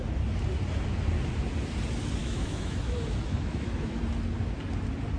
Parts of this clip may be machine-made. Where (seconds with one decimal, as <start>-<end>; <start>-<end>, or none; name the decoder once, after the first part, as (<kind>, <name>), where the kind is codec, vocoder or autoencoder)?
2.2-4.0 (autoencoder, DAC-VAE)